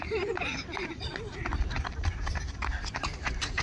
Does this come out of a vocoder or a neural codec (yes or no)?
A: yes